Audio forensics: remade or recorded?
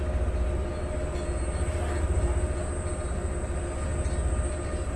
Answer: recorded